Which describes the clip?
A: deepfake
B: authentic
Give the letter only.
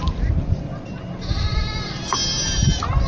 B